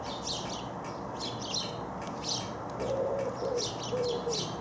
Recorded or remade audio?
recorded